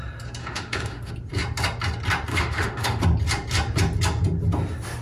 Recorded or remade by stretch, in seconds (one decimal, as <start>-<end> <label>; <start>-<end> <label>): 0.0-0.4 recorded; 0.4-1.1 remade; 1.1-2.3 recorded; 2.3-3.0 remade; 3.0-5.0 recorded